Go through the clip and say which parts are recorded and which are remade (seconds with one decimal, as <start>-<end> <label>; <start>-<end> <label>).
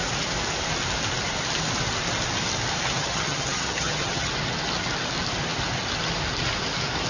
0.0-3.0 recorded; 3.0-4.3 remade; 4.3-7.1 recorded